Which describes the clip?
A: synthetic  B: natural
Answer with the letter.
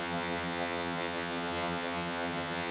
A